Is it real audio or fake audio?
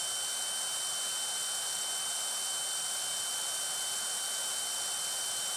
real